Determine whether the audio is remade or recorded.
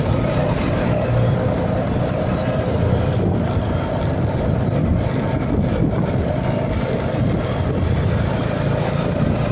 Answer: recorded